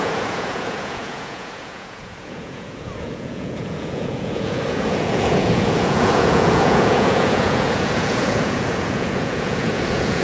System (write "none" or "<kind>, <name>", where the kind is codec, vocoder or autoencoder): vocoder, Vocos